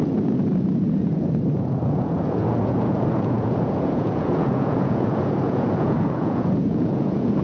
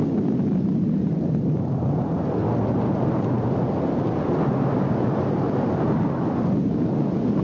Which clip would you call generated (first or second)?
first